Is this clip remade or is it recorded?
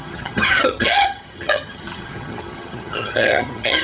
remade